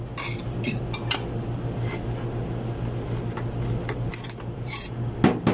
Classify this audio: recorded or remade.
recorded